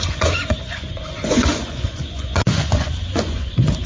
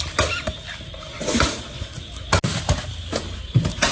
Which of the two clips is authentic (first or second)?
second